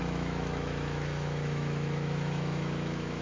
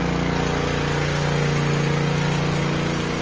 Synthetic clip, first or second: first